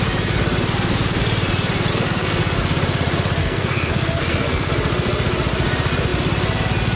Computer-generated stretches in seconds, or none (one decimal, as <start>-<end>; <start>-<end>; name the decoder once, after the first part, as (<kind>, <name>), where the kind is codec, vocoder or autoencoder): 1.9-2.4 (codec, SNAC); 3.4-4.7